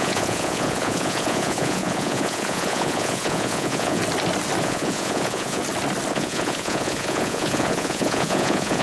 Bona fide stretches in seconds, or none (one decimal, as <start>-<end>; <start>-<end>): 4.0-4.6; 5.6-6.1